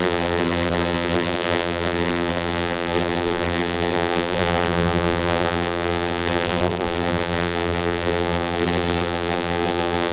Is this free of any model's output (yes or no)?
no